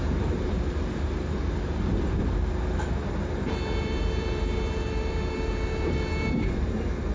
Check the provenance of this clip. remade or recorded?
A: remade